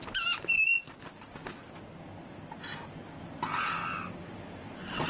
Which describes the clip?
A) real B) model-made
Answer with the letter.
A